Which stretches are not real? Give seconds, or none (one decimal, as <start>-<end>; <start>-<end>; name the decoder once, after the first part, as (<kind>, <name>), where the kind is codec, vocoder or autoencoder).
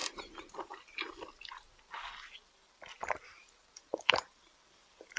3.4-5.2 (vocoder, BigVGAN v2)